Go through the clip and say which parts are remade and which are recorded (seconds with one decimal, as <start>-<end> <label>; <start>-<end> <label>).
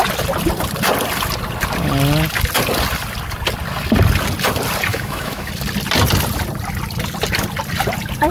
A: 0.0-4.9 recorded; 4.9-5.5 remade; 5.5-8.3 recorded